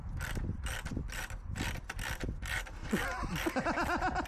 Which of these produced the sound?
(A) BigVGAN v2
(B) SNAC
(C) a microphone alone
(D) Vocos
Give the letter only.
C